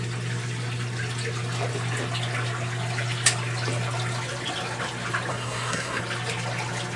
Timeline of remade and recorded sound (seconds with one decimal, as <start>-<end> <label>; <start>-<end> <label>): 0.0-5.3 recorded; 5.3-6.0 remade; 6.0-7.0 recorded